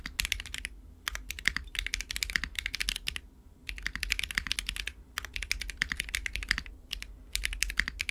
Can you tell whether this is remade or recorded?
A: recorded